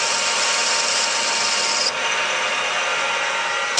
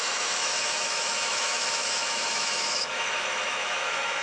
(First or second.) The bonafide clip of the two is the first